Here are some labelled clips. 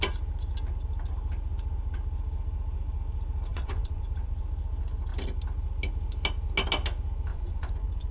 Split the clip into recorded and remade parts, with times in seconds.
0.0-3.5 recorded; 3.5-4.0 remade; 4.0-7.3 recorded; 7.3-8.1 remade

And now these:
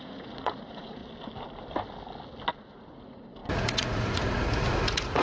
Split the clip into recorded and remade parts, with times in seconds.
0.0-1.0 remade; 1.0-2.5 recorded; 2.5-5.2 remade